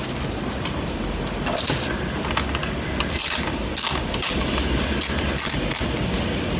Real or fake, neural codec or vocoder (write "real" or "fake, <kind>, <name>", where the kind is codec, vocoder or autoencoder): real